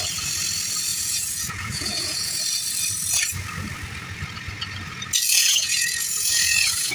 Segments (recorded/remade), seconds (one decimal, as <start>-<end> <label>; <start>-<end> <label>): 0.0-0.9 recorded; 0.9-2.4 remade; 2.4-5.3 recorded; 5.3-6.9 remade